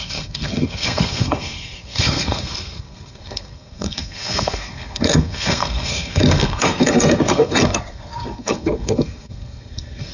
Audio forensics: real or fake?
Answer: fake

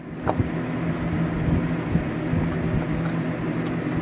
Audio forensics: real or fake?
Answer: real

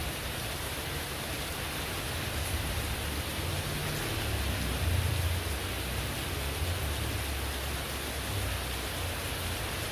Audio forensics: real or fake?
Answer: real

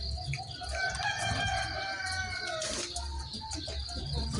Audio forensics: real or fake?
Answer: real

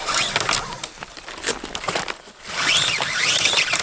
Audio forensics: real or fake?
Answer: real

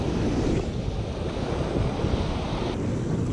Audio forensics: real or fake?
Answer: real